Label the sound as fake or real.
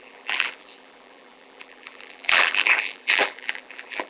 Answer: fake